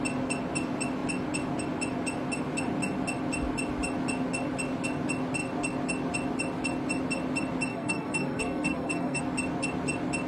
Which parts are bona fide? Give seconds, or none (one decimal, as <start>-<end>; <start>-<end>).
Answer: 0.0-7.7; 9.2-10.3